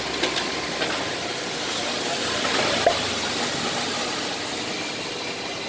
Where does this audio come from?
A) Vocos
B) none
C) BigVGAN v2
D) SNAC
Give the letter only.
B